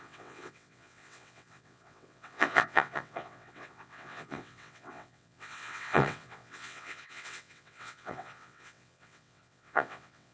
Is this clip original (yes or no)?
no